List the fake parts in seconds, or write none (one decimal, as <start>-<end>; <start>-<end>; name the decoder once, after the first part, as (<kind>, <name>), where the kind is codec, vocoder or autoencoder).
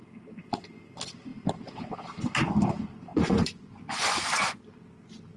3.1-4.6 (vocoder, Vocos)